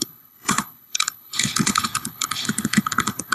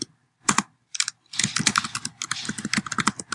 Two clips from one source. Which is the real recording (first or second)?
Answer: second